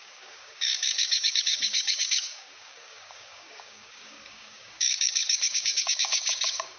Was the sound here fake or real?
fake